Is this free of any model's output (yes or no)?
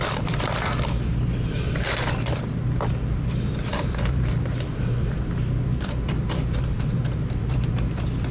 no